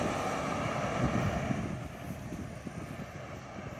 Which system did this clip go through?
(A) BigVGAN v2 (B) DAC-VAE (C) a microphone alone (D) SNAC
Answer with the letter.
C